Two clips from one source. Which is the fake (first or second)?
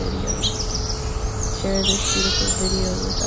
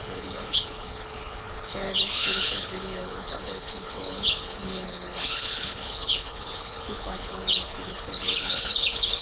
second